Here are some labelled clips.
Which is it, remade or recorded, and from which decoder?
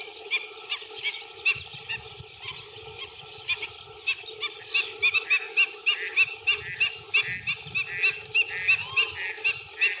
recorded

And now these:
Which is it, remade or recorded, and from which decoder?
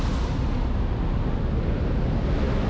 recorded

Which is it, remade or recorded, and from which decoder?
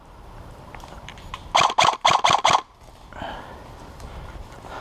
recorded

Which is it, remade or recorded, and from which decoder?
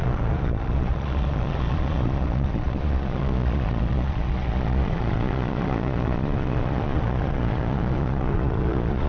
remade, vocoder, Vocos